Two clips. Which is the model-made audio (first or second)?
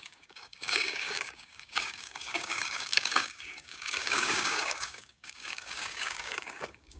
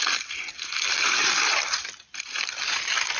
first